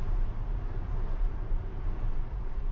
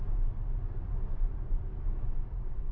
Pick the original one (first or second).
second